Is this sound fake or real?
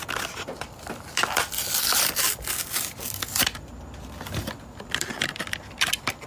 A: real